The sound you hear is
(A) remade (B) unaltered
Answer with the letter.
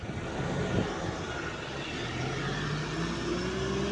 B